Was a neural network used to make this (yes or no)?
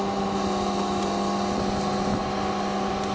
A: no